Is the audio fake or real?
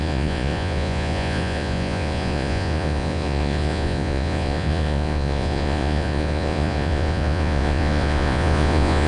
fake